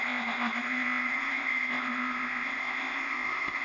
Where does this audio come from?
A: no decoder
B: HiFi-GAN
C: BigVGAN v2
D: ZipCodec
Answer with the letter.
D